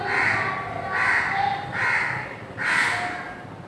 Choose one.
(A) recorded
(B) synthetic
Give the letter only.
A